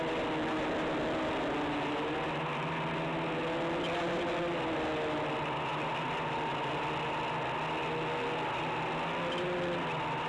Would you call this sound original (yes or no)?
yes